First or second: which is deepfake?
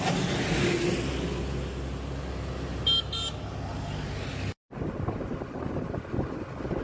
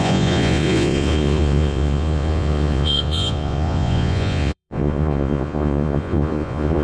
second